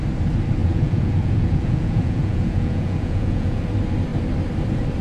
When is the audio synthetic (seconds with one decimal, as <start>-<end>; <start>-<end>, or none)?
0.6-3.6